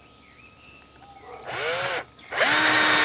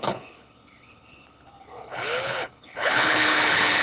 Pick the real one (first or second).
first